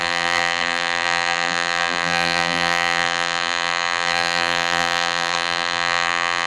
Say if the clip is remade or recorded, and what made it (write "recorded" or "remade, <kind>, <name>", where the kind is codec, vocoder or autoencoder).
remade, vocoder, BigVGAN v2